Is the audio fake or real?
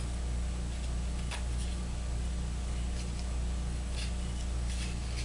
real